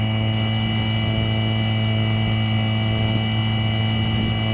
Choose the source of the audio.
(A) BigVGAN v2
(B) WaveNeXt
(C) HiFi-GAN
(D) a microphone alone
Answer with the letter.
D